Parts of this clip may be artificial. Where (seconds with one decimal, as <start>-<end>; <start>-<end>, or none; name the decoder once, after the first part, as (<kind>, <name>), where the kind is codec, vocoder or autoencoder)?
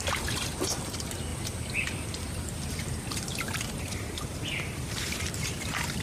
0.0-1.3 (vocoder, BigVGAN v2); 1.8-6.0